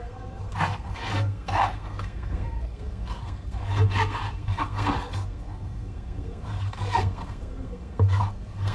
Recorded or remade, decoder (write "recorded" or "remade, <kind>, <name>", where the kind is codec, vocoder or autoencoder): remade, codec, SNAC